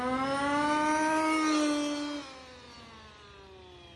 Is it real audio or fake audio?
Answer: real